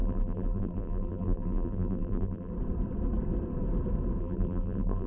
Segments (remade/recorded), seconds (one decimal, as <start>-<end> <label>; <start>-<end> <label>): 0.0-2.5 remade; 2.5-4.2 recorded; 4.2-5.1 remade